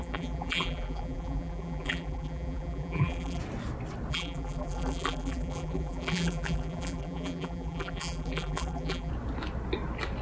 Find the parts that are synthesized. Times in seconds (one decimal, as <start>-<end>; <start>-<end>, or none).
0.0-3.4; 4.1-9.1